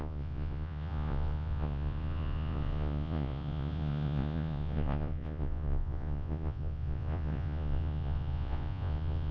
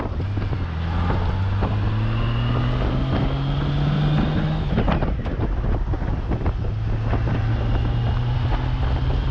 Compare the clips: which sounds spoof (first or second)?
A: first